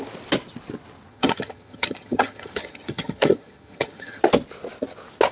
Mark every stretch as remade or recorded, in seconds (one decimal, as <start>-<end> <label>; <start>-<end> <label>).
0.0-1.1 recorded; 1.1-4.2 remade; 4.2-5.3 recorded